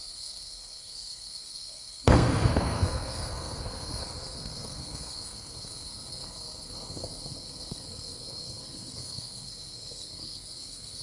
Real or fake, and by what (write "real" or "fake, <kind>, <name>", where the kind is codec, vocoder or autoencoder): fake, codec, SNAC